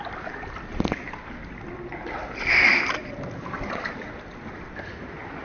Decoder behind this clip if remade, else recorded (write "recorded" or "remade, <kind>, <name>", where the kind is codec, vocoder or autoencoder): recorded